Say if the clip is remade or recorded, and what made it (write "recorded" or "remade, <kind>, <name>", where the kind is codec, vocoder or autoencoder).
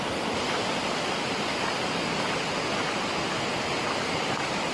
recorded